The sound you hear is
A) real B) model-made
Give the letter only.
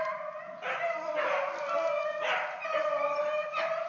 A